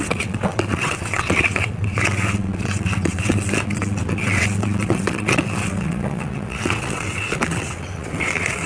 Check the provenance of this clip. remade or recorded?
remade